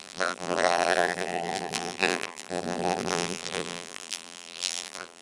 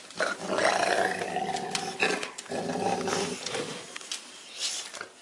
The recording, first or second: second